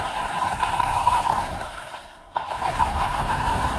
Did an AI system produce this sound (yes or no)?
yes